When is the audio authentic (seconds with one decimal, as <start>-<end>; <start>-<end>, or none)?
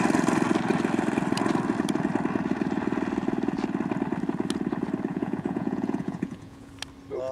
0.0-5.1; 6.7-7.3